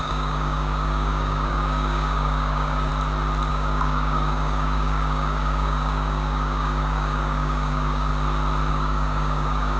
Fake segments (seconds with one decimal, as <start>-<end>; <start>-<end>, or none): 0.0-2.9; 3.5-8.1; 8.7-9.8